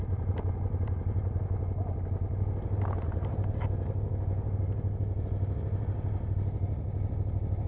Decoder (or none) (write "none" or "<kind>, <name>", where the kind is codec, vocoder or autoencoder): none